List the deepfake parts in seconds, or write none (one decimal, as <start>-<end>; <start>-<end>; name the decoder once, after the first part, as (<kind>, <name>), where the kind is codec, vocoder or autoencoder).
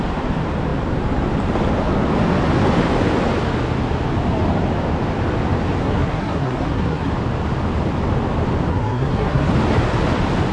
5.8-7.1 (codec, SNAC); 8.7-9.5